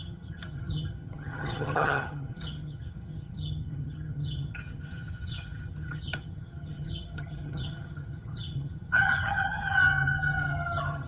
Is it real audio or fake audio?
fake